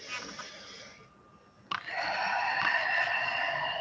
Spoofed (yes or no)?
no